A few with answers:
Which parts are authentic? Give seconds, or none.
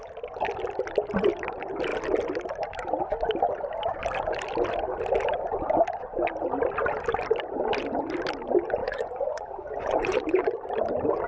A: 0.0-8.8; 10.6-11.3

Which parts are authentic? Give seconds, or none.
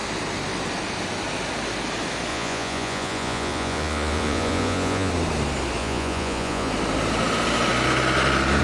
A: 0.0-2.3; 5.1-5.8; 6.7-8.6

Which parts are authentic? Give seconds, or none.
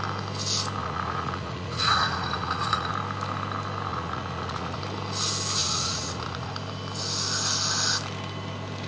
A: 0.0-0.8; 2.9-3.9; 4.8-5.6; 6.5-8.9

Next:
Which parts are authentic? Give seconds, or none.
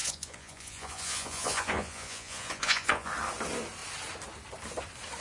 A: 3.1-5.2